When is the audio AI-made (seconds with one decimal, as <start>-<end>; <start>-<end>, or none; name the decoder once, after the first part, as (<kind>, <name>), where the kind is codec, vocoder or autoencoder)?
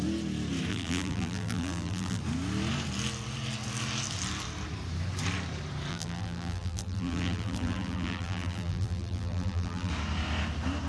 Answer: 0.7-2.2 (vocoder, BigVGAN v2); 5.9-9.9